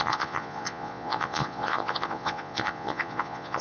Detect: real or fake fake